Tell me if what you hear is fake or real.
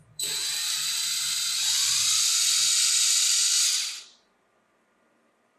fake